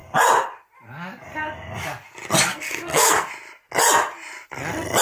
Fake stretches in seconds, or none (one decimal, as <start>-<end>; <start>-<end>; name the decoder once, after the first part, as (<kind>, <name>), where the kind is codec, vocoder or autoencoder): 2.5-3.3 (codec, SNAC)